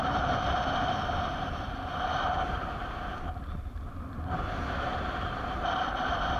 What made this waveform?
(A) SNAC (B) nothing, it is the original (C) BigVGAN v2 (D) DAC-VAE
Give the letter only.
C